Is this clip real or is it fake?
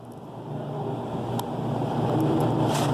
real